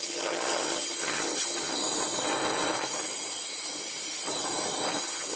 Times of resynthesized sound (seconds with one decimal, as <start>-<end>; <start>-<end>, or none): 0.0-1.8; 5.0-5.4